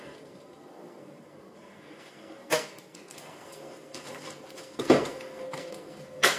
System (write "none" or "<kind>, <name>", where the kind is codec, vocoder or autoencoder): codec, SNAC